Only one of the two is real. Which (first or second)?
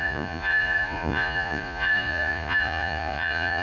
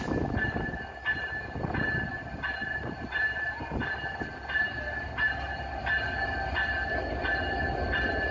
second